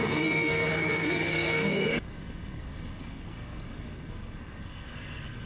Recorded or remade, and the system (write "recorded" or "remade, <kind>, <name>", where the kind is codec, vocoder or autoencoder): remade, codec, SNAC